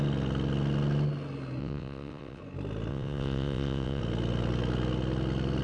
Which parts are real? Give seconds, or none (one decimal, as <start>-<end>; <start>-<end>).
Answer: 0.0-1.6; 2.4-2.9; 4.0-5.6